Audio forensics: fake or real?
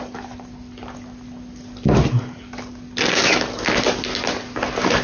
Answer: real